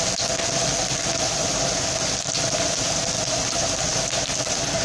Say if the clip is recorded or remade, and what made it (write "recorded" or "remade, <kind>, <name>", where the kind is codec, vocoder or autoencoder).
remade, vocoder, BigVGAN v2